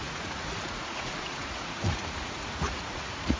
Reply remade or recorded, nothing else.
remade